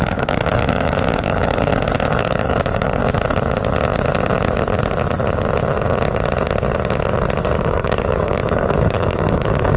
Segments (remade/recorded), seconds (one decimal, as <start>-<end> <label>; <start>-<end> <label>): 0.0-1.7 remade; 1.7-2.2 recorded; 2.2-3.0 remade; 3.0-7.6 recorded; 7.6-9.8 remade